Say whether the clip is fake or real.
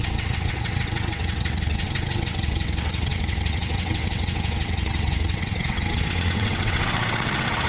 fake